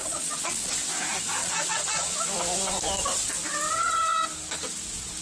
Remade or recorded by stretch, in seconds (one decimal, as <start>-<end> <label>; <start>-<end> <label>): 0.0-0.7 remade; 0.7-1.4 recorded; 1.4-2.2 remade; 2.2-5.2 recorded